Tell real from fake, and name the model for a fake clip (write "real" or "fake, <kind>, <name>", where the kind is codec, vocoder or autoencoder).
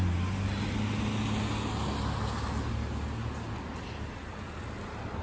real